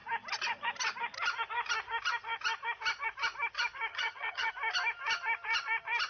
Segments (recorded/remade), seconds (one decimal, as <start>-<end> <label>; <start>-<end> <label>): 0.0-3.9 recorded; 3.9-4.5 remade; 4.5-6.1 recorded